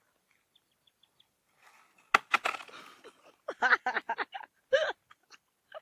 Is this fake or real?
real